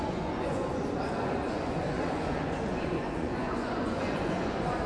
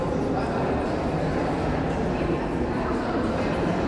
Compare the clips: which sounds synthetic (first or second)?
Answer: first